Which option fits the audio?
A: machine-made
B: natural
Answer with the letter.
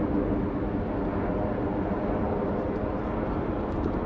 B